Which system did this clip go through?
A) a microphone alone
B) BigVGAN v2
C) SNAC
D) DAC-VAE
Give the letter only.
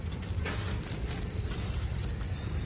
B